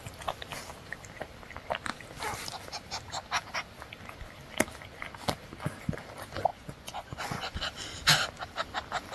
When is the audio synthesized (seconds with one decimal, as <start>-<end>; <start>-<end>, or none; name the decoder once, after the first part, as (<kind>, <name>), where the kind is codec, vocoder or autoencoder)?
6.5-7.6 (vocoder, Vocos)